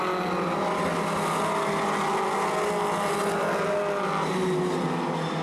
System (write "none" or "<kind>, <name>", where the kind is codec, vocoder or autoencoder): none